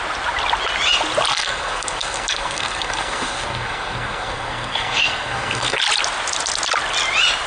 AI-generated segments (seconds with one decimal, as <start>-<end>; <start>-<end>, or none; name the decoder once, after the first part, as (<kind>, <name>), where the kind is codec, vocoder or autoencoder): 1.3-5.8 (codec, SNAC)